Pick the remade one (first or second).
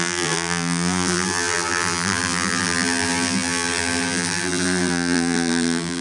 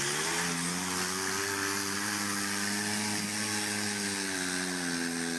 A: first